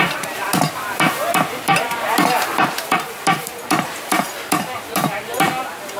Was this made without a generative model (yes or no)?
no